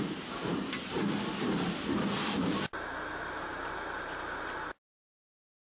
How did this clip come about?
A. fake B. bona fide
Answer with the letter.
B